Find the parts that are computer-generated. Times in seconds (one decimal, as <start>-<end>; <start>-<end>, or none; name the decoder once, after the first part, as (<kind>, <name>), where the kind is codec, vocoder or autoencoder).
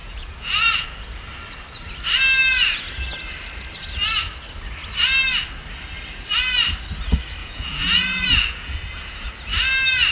0.0-1.2 (vocoder, Vocos); 7.4-9.3